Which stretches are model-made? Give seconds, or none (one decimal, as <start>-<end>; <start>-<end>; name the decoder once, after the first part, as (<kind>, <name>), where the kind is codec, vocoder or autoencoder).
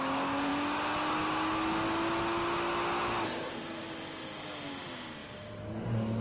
none